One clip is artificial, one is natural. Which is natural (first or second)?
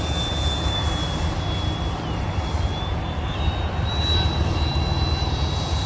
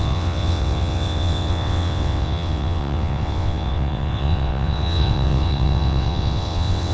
first